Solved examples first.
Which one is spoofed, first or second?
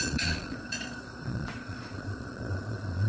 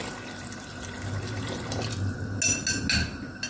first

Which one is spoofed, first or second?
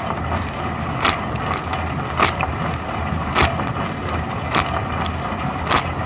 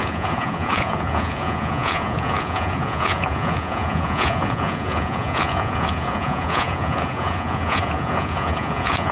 second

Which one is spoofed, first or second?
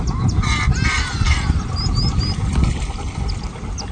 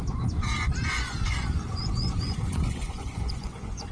second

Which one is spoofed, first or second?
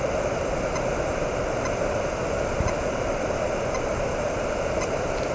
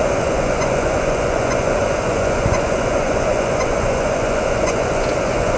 second